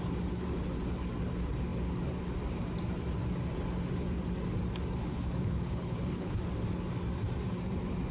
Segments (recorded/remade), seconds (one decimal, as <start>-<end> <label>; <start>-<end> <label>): 0.0-5.1 recorded; 5.1-6.4 remade; 6.4-8.1 recorded